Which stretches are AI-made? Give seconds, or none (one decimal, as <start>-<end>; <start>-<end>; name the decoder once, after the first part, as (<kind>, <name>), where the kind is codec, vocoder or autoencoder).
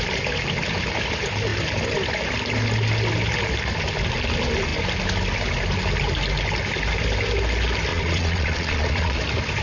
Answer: 7.9-9.2 (vocoder, Vocos)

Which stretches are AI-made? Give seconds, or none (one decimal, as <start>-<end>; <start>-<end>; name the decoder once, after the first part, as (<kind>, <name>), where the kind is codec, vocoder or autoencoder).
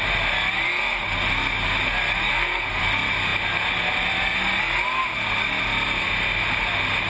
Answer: 2.3-2.8 (codec, SNAC)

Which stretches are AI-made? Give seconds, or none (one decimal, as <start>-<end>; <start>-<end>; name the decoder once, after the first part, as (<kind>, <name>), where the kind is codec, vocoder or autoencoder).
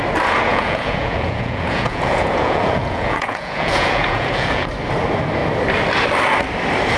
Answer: 0.5-4.7 (vocoder, Vocos)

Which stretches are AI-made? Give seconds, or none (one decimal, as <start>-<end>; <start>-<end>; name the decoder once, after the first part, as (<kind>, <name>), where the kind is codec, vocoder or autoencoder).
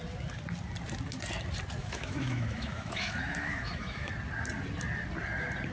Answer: 1.8-4.1 (autoencoder, DAC-VAE)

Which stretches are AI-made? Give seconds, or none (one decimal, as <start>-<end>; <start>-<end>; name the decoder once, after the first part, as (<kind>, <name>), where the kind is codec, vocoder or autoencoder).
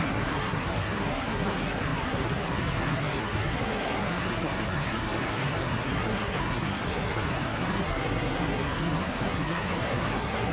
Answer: 0.0-10.5 (codec, SNAC)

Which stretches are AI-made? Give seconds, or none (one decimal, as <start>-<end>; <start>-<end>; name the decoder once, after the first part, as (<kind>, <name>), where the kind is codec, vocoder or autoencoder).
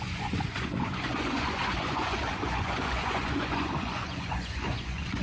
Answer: 0.0-5.2 (vocoder, Vocos)